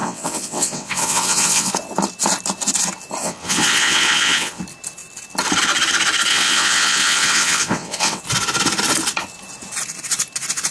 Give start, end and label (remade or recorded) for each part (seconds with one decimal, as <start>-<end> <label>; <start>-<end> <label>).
0.0-1.7 remade; 1.7-3.2 recorded; 3.2-4.6 remade; 4.6-6.3 recorded; 6.3-8.2 remade; 8.2-10.7 recorded